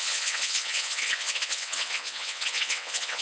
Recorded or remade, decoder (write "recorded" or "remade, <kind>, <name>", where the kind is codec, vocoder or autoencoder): remade, vocoder, WaveNeXt